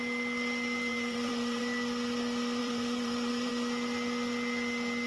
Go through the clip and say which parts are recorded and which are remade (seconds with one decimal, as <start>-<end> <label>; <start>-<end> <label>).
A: 0.0-0.9 recorded; 0.9-1.6 remade; 1.6-2.6 recorded; 2.6-3.5 remade; 3.5-5.1 recorded